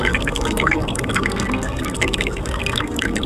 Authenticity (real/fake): fake